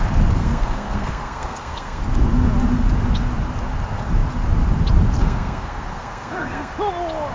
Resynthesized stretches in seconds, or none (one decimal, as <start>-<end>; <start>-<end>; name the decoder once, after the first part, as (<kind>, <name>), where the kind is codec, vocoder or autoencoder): 0.4-2.0 (codec, SNAC); 5.2-6.7